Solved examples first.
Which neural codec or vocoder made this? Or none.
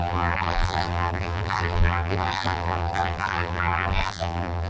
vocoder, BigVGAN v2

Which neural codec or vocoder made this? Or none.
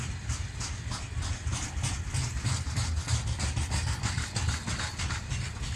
none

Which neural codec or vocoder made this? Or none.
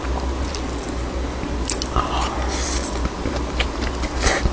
none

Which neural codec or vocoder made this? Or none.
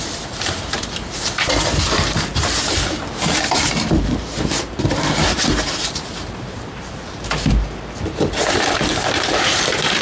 vocoder, BigVGAN v2